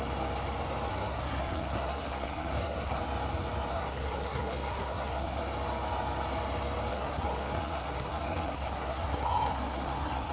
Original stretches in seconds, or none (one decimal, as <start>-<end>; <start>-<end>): 0.0-0.9; 3.0-3.7; 5.4-6.9